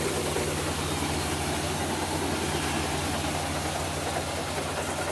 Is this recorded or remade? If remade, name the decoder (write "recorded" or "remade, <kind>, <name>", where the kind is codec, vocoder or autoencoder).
recorded